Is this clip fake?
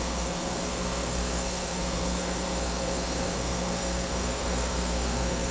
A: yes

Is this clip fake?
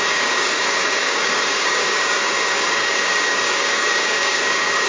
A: yes